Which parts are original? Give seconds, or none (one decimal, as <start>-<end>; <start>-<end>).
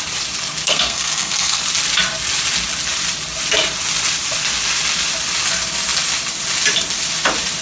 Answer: 0.0-0.6; 1.6-7.6